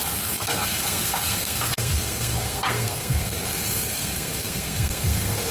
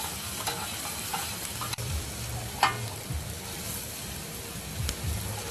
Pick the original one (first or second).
second